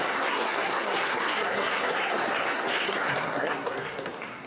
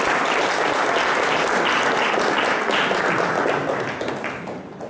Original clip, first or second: second